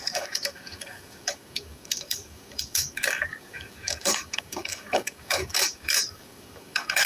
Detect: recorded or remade remade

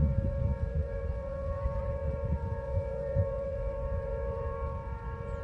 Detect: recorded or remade remade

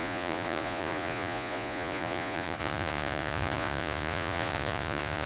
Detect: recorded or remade remade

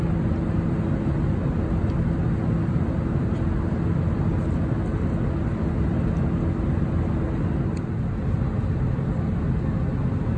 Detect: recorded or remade recorded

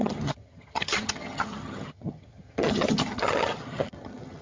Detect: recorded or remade remade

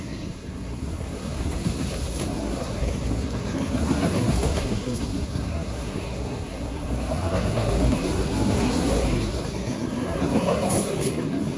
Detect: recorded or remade remade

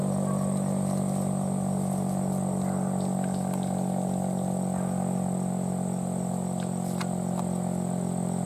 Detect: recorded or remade recorded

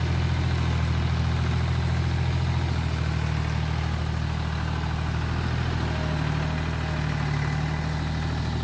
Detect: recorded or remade recorded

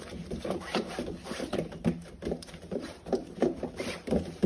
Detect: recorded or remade remade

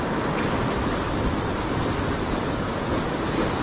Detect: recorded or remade recorded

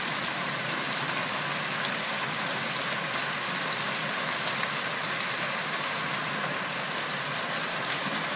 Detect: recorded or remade recorded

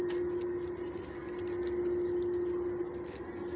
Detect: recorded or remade recorded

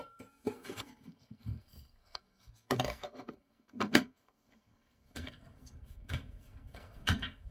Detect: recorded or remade remade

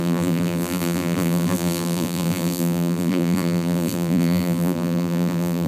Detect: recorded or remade remade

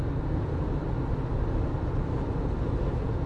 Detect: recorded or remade recorded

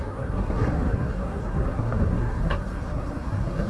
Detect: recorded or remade remade